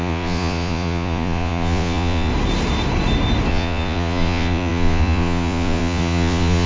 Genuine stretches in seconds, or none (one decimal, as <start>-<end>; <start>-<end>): 2.3-3.5